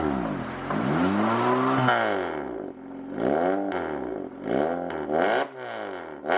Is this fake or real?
real